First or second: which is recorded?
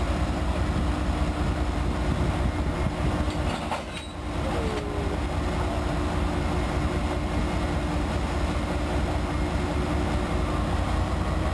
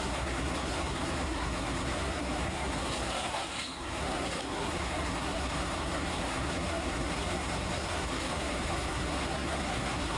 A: first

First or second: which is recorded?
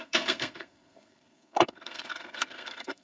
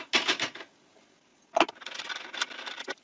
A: second